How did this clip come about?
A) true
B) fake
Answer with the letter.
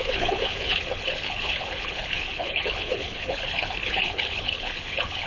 B